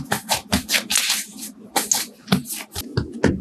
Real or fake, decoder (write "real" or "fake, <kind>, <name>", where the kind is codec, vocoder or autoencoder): real